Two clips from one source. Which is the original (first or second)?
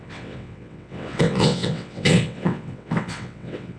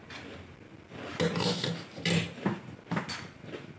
second